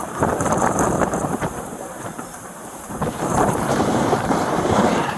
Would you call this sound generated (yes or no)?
yes